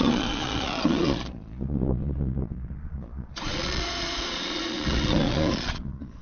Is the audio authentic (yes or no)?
no